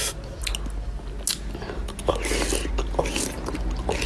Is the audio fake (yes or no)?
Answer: no